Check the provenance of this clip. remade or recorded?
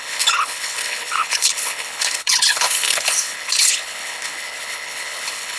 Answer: remade